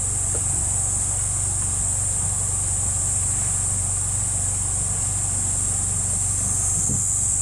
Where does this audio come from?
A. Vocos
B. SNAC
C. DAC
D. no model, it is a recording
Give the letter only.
D